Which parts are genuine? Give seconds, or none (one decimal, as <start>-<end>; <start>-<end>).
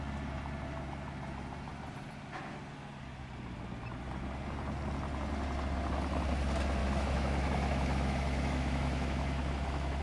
0.0-6.8